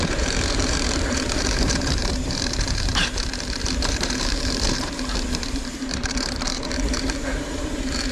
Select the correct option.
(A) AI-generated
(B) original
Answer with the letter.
A